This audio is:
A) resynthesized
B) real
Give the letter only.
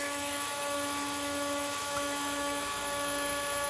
A